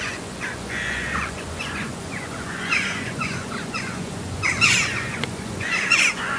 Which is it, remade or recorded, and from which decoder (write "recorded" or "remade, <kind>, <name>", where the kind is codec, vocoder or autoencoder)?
remade, vocoder, Vocos